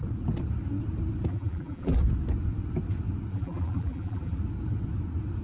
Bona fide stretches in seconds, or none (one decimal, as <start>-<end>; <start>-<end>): 0.0-1.3; 2.0-3.3; 4.4-5.4